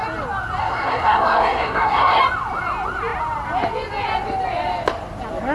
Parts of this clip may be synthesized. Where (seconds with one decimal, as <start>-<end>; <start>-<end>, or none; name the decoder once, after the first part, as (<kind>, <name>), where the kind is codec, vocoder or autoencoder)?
0.6-2.2 (codec, SNAC)